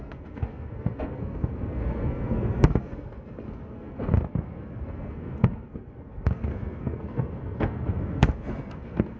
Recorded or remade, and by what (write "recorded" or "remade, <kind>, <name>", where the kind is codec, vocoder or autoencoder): remade, codec, SNAC